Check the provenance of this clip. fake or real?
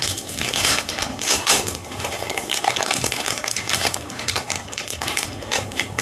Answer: fake